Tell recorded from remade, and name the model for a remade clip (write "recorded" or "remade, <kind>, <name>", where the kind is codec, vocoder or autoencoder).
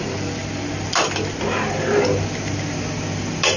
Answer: recorded